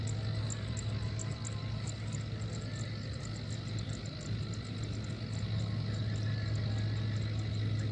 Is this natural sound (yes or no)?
yes